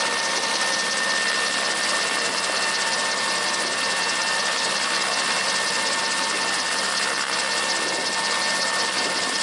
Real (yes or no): yes